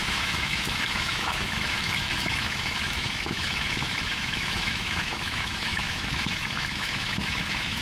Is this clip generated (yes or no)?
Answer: yes